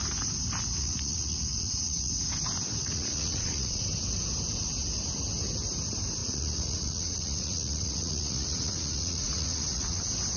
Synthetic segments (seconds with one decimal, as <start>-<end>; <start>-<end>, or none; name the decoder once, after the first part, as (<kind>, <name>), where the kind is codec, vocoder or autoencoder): 0.8-2.1 (vocoder, Vocos); 2.8-3.8; 6.2-10.0